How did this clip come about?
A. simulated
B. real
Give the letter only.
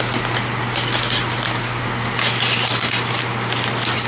B